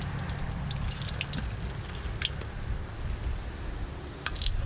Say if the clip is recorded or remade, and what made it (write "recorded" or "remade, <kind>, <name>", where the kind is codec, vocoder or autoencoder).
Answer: recorded